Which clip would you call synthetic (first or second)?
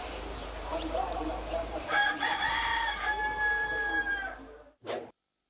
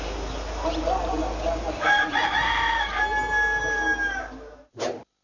first